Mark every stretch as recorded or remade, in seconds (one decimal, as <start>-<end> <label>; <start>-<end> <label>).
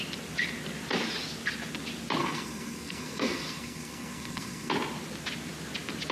0.0-2.2 recorded; 2.2-4.7 remade; 4.7-6.1 recorded